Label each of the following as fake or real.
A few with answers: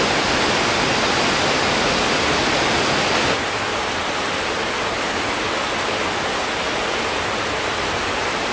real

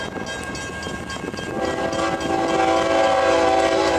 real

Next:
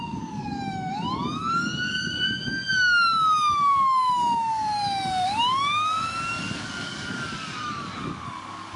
fake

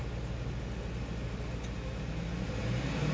real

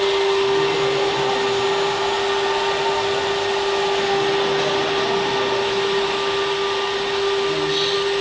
real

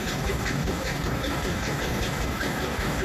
fake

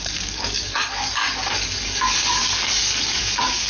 fake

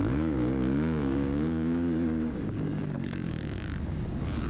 fake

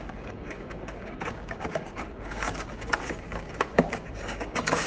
fake